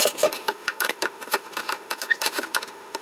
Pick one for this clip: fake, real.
fake